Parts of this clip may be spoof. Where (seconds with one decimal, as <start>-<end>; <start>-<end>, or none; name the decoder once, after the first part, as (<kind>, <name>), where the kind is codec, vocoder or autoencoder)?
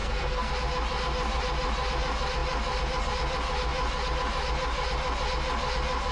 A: 0.0-0.5 (codec, SNAC)